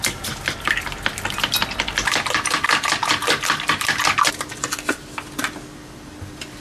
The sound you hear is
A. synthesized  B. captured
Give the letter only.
B